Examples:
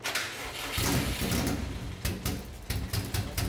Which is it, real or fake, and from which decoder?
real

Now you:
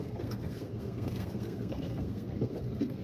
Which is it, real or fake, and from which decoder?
fake, codec, SNAC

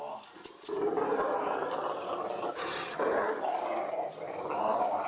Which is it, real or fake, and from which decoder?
fake, vocoder, BigVGAN v2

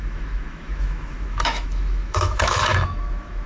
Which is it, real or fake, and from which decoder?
fake, autoencoder, DAC-VAE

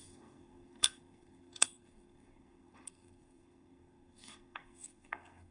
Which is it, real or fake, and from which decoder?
fake, codec, SNAC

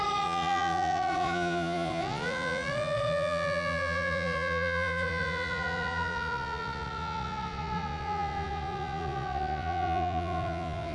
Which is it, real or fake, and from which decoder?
fake, vocoder, Vocos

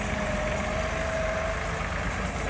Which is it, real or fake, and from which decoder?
real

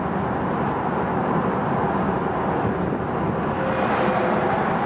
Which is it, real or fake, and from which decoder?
real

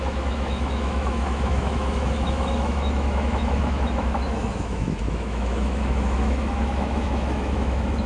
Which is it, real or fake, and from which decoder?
fake, autoencoder, DAC-VAE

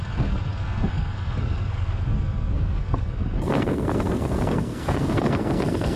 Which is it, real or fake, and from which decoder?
fake, codec, SNAC